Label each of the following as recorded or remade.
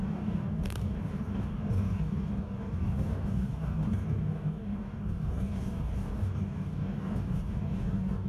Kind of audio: remade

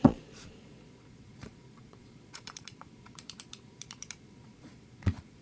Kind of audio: remade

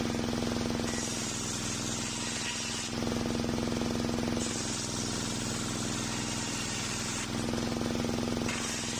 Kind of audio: recorded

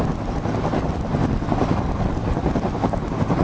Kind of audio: recorded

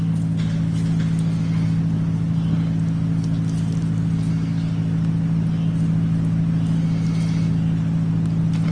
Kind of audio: recorded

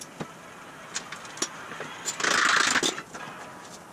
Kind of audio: recorded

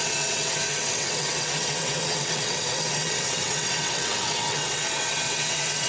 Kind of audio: remade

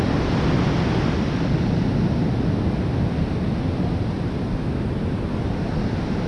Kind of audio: recorded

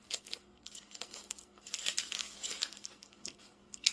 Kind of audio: remade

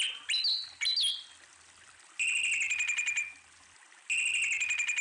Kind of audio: recorded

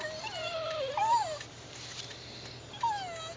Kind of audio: recorded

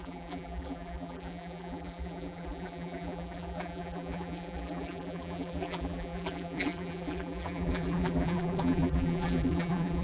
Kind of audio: remade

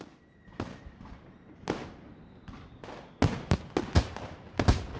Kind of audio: recorded